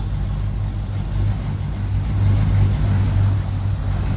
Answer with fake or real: real